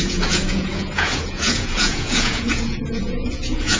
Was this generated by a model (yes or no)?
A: yes